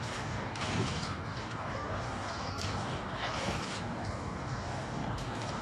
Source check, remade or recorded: remade